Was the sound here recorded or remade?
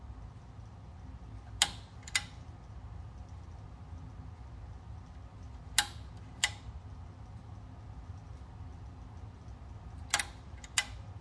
recorded